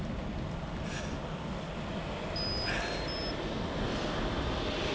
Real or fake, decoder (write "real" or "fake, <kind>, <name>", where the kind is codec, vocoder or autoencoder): real